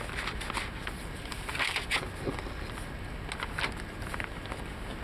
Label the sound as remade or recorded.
recorded